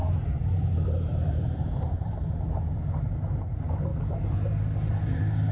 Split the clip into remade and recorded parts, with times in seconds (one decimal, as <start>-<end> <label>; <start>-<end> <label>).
0.0-2.5 remade; 2.5-5.5 recorded